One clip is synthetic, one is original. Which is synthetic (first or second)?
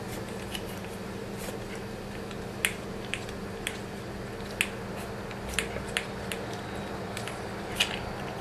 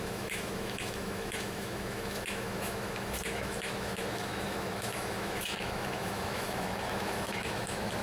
second